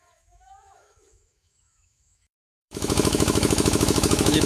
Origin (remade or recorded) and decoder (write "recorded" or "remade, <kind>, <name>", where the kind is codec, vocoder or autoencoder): remade, autoencoder, DAC-VAE